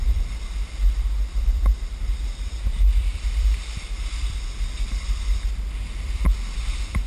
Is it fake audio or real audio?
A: real